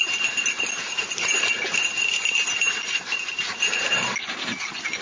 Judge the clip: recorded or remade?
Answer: recorded